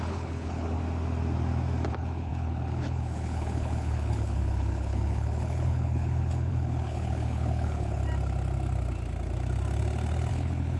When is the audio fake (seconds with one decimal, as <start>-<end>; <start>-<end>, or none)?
0.0-0.8; 1.9-8.0; 10.3-10.8